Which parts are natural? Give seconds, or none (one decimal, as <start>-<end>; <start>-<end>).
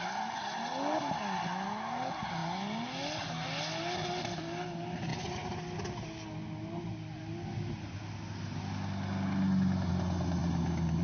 0.0-11.0